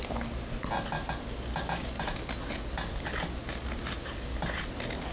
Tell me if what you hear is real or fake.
real